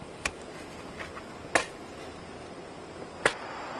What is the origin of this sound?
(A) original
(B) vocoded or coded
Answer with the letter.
A